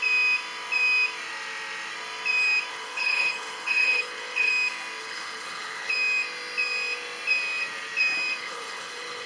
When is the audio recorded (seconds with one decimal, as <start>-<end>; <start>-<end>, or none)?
0.0-2.7; 4.5-5.0; 5.9-8.4